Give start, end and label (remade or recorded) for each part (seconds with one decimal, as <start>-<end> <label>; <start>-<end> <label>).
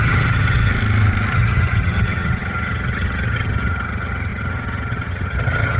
0.0-0.7 remade; 0.7-1.3 recorded; 1.3-5.8 remade